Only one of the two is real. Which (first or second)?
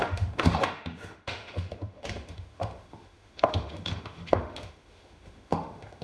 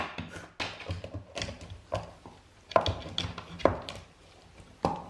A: second